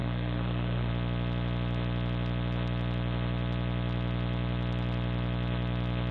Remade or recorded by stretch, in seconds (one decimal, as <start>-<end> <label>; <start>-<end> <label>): 0.0-0.9 remade; 0.9-6.1 recorded